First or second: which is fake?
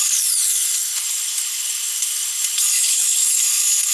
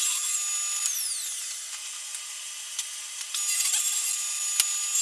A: first